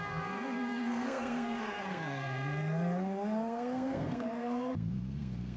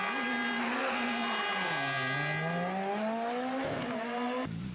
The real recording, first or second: second